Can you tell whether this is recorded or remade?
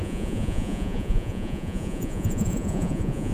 remade